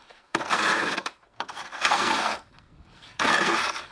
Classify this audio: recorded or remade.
remade